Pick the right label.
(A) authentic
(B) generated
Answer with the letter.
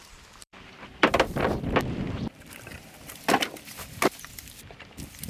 B